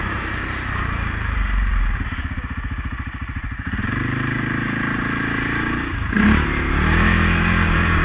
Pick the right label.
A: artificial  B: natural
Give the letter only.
A